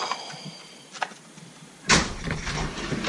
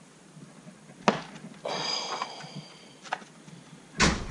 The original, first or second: second